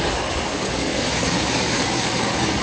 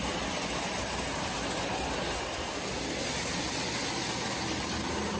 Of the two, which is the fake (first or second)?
first